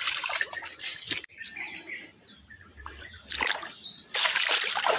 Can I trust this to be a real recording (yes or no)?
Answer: yes